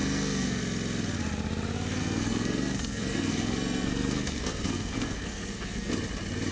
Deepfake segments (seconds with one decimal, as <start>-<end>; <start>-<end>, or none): 0.0-0.6; 2.0-5.9